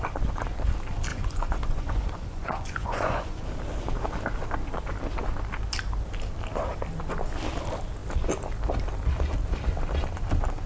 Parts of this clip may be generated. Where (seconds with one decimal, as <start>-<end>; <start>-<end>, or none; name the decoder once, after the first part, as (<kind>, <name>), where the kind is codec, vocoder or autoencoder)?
1.1-3.4 (vocoder, Vocos)